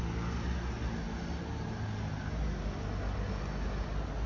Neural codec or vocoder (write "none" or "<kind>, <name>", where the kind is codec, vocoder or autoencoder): none